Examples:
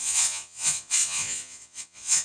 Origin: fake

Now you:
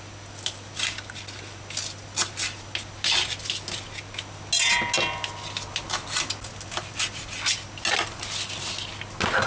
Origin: real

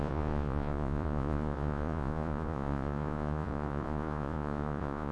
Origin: fake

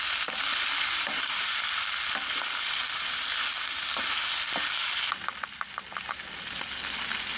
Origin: real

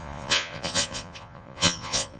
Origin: fake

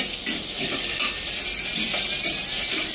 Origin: real